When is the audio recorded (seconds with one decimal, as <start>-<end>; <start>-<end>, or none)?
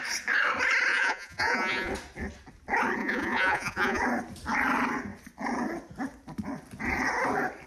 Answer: 0.0-0.9; 1.9-3.0; 4.0-7.7